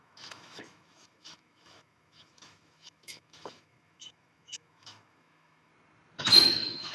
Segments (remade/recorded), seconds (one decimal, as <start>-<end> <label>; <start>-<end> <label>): 0.0-5.7 remade; 5.7-6.2 recorded; 6.2-6.9 remade